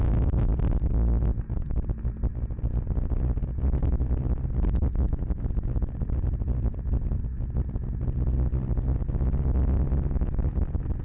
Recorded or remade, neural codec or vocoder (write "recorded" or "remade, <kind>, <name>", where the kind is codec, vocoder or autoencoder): recorded